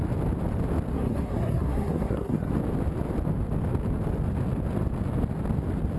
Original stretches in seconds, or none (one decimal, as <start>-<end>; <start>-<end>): 0.0-0.9; 2.5-6.0